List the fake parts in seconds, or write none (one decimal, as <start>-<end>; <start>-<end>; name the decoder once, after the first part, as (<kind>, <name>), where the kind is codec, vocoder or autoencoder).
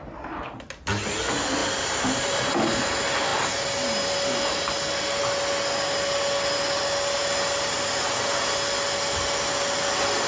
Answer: 1.6-2.5 (vocoder, BigVGAN v2)